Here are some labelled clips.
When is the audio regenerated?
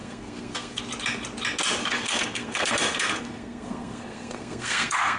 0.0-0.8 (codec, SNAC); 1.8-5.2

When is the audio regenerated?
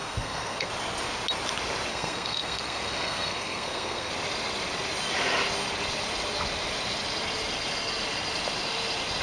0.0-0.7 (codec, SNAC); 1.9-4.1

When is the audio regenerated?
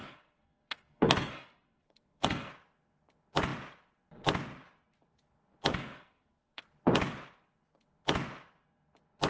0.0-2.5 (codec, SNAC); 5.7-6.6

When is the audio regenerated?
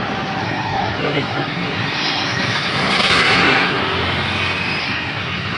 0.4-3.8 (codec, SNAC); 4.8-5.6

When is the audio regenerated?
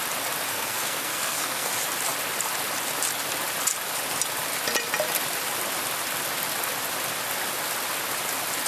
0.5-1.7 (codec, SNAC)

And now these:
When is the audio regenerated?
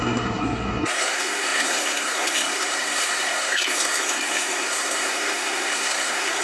0.0-6.4 (codec, SNAC)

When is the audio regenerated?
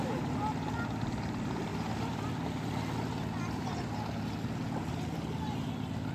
none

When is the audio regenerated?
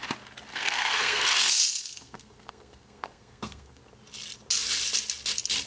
0.5-3.8 (codec, SNAC)